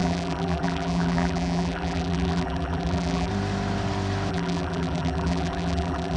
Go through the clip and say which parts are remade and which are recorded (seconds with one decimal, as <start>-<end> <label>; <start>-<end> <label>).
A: 0.0-3.3 remade; 3.3-4.3 recorded; 4.3-6.2 remade